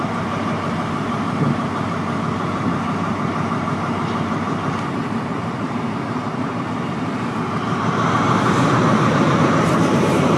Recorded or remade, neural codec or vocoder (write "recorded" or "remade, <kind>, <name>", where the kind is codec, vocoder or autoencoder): remade, vocoder, BigVGAN v2